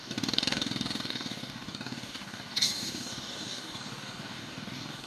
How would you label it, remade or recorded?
remade